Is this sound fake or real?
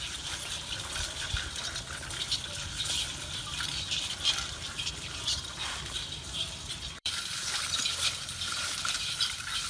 fake